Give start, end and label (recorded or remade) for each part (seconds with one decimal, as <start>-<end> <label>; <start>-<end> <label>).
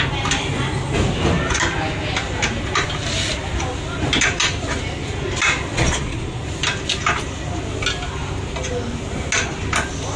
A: 0.0-5.7 recorded; 5.7-6.4 remade; 6.4-10.2 recorded